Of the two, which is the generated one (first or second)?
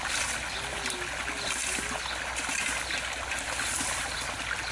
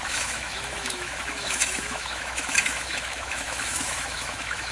second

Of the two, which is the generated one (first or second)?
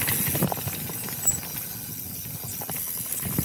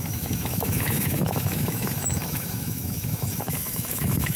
second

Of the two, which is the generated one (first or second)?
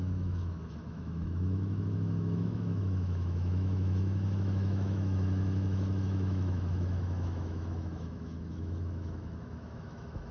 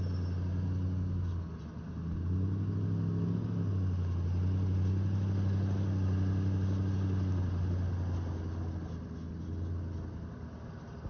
first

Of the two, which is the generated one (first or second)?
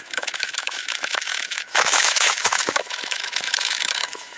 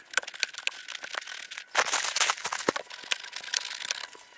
first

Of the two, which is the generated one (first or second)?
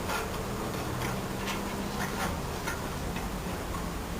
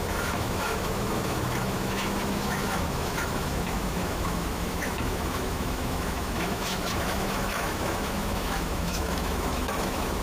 second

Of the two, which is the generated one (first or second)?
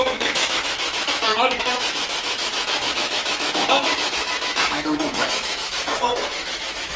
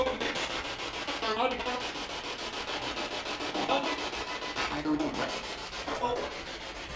first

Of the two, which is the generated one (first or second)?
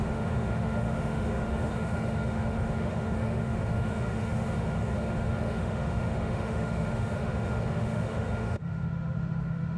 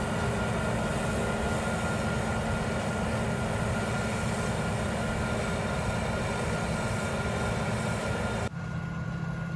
first